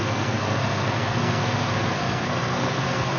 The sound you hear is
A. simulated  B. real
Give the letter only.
A